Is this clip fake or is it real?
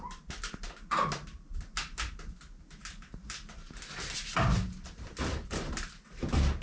real